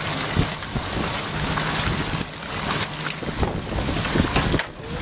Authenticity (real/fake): real